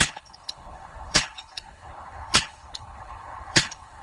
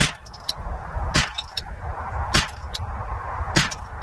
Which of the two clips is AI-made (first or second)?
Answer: first